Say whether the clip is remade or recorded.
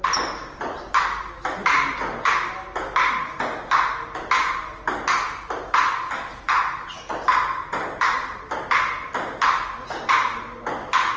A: recorded